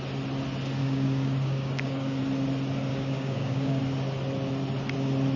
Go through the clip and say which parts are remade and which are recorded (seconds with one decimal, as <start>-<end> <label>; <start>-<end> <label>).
0.0-0.8 recorded; 0.8-2.2 remade; 2.2-2.9 recorded; 2.9-3.8 remade; 3.8-5.4 recorded